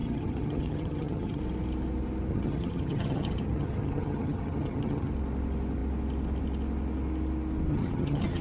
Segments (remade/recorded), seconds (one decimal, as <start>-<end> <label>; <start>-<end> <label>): 0.0-1.4 remade; 1.4-2.3 recorded; 2.3-5.1 remade; 5.1-7.7 recorded; 7.7-8.4 remade